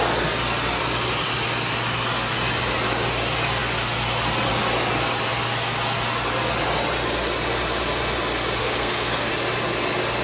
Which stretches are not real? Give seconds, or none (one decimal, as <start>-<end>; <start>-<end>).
8.6-9.3